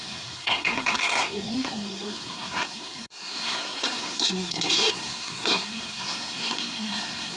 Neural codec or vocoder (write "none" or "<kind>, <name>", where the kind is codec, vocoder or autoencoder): codec, SNAC